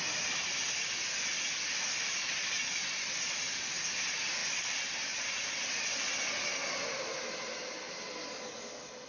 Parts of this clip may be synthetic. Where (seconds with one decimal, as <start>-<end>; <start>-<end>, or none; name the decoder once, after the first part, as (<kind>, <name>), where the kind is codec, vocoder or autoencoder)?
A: none